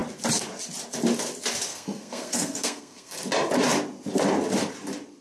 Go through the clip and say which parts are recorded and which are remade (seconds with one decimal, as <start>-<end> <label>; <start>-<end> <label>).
0.0-1.7 recorded; 1.7-3.2 remade; 3.2-5.2 recorded